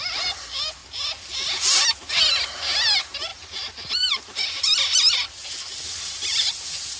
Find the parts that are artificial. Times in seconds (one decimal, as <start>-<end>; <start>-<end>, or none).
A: none